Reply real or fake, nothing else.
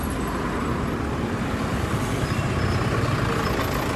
real